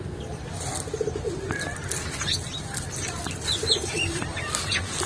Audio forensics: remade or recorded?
recorded